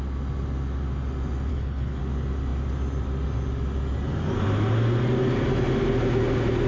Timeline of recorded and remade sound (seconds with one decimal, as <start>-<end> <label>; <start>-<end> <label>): 0.0-1.5 recorded; 1.5-2.0 remade; 2.0-6.7 recorded